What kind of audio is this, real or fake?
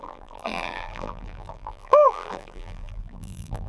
fake